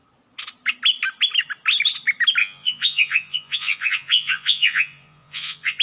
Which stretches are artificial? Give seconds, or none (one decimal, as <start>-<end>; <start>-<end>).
2.4-5.8